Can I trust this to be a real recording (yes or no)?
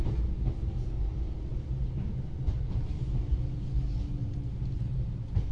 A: yes